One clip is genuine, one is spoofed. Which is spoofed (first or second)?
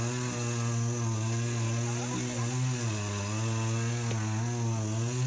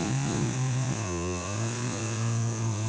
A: second